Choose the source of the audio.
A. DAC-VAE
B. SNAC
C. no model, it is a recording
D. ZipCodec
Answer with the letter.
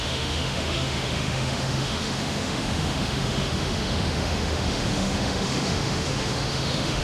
A